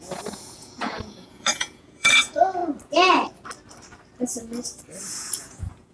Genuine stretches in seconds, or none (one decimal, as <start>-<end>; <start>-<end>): 2.6-5.0